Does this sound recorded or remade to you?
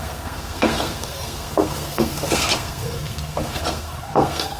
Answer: remade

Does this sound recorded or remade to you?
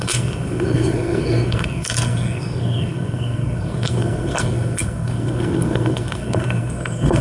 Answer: remade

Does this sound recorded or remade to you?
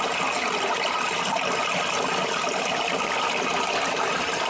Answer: recorded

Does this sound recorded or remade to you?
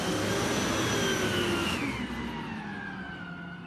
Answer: recorded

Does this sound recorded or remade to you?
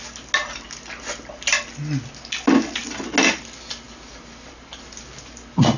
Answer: recorded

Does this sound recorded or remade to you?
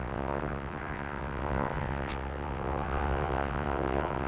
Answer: remade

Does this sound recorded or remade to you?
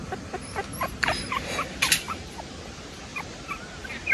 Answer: recorded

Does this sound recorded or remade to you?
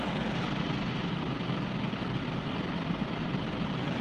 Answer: recorded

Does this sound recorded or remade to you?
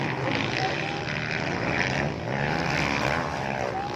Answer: recorded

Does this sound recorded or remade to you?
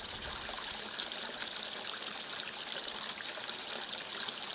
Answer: recorded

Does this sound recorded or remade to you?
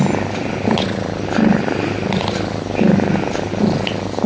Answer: recorded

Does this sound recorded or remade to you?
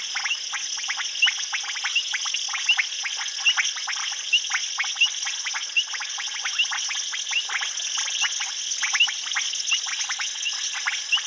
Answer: recorded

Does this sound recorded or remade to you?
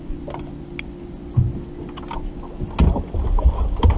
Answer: recorded